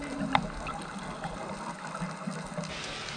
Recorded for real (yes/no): yes